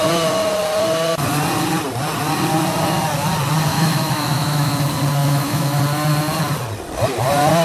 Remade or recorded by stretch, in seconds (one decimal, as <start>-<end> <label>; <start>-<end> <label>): 0.0-3.7 recorded; 3.7-4.7 remade; 4.7-5.2 recorded; 5.2-5.8 remade; 5.8-7.6 recorded